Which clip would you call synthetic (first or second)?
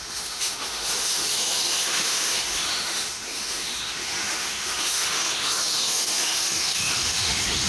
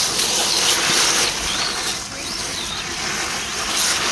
first